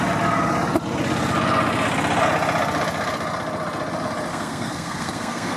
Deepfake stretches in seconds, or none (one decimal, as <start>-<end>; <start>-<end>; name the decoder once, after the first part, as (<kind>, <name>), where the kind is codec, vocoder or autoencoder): 4.3-5.6 (codec, SNAC)